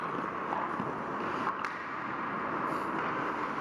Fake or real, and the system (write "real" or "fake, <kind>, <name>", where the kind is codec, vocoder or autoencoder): real